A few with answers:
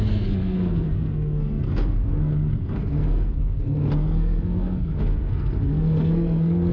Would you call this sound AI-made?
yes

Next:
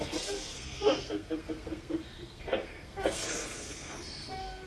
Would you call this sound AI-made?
yes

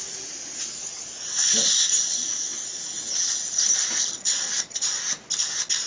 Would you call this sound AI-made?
no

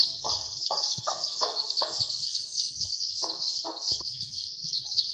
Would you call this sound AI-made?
yes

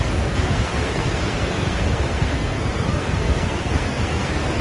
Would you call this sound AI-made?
yes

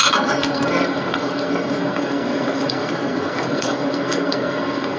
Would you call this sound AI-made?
yes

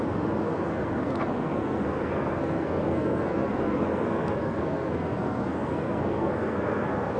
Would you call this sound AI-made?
yes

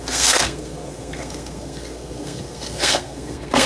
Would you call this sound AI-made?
yes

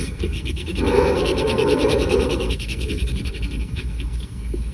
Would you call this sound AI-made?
yes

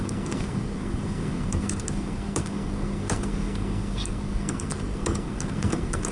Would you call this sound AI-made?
yes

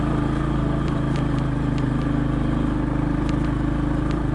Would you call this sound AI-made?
no